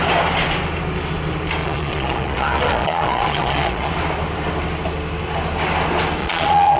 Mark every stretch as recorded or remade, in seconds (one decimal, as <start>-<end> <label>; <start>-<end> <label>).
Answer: 0.0-1.6 recorded; 1.6-3.9 remade; 3.9-6.2 recorded; 6.2-6.8 remade